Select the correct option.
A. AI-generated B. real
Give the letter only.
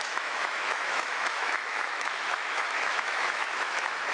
A